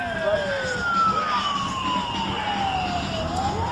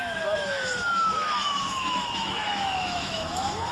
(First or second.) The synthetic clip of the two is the second